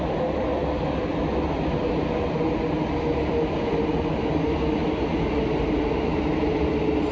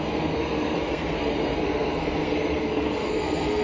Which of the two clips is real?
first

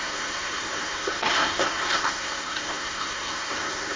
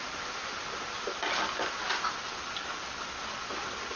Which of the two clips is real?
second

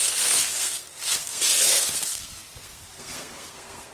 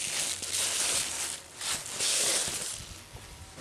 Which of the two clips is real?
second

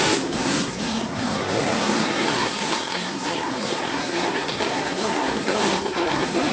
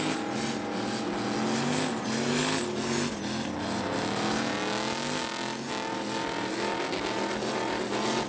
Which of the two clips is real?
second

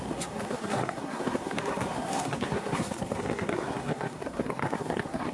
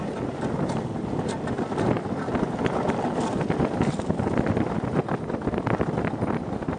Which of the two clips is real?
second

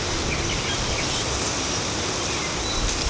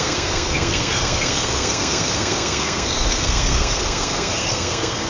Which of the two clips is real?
first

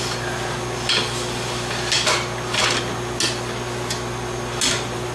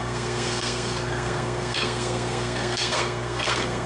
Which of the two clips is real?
first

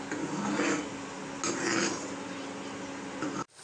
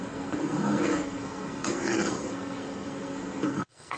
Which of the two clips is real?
first